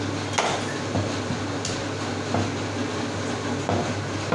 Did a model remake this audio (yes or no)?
no